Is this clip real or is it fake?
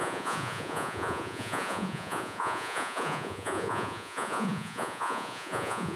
fake